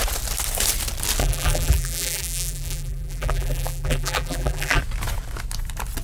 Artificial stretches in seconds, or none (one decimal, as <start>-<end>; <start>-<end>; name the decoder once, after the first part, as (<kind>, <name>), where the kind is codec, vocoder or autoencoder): 1.2-4.8 (vocoder, BigVGAN v2)